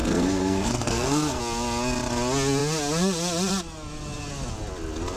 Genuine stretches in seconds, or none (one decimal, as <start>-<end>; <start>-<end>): 1.4-5.2